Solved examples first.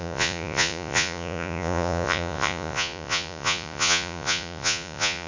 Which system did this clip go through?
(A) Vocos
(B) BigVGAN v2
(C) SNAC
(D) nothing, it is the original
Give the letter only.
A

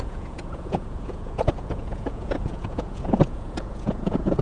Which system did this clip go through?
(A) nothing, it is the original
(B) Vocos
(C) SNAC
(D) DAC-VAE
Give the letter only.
B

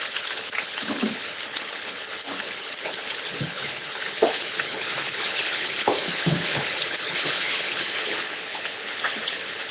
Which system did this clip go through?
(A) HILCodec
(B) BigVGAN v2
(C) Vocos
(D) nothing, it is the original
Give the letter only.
A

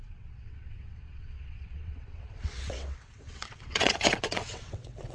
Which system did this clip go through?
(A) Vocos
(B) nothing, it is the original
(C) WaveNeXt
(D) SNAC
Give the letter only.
C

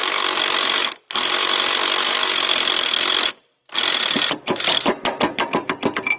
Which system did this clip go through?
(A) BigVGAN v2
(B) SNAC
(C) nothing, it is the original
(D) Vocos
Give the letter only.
C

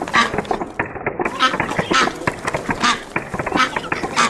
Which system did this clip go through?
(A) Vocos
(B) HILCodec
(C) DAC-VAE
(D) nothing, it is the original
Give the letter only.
D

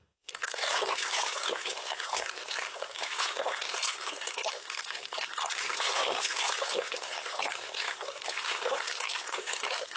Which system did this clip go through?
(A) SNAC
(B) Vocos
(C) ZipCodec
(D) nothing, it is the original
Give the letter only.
A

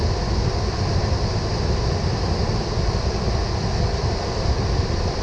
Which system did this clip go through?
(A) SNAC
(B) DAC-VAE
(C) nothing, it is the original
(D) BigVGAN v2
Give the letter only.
C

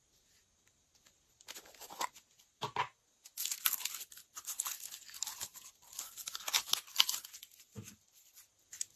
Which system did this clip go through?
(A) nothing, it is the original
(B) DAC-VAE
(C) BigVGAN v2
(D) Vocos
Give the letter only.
A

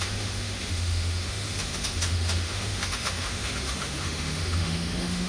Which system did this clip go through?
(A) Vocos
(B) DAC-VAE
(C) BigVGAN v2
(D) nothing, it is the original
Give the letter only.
B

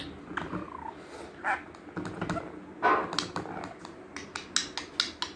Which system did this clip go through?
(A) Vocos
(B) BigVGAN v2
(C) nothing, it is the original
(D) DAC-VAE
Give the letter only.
C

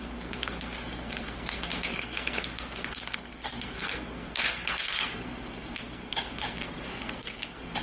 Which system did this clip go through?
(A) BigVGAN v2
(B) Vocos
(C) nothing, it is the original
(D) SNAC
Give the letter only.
D